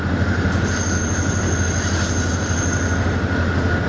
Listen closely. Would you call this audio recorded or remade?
recorded